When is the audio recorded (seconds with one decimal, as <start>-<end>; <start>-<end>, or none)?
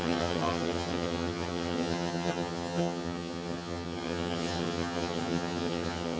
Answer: none